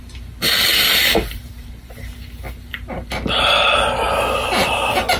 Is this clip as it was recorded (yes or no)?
yes